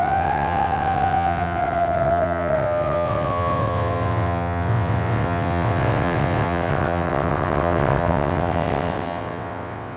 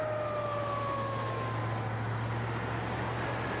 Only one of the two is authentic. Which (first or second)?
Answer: second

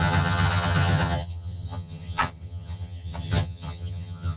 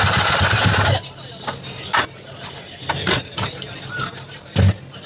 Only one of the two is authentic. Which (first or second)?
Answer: second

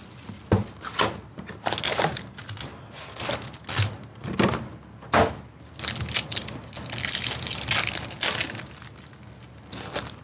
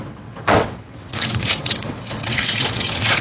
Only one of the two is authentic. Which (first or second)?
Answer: first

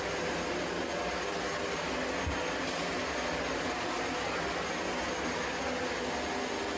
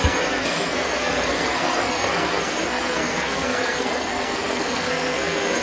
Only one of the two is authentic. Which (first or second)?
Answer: first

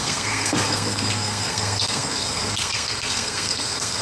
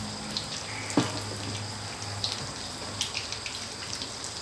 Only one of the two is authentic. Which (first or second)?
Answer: second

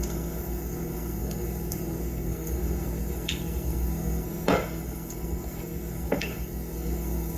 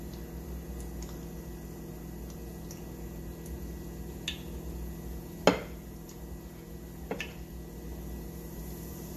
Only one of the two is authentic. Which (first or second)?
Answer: second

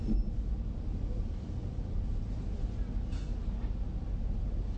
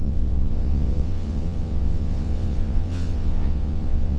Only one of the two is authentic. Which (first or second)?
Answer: first